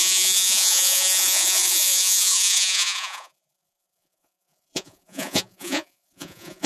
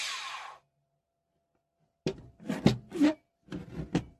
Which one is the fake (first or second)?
first